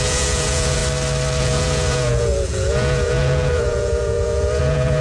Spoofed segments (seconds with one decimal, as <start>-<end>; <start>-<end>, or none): 0.0-0.8; 1.4-5.0